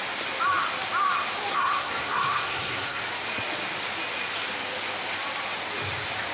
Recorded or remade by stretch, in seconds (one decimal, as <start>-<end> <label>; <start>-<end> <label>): 0.0-1.5 recorded; 1.5-3.0 remade; 3.0-6.3 recorded